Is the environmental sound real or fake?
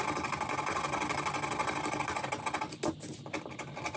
real